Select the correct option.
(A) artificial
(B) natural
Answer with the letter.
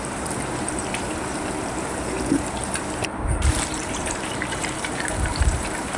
A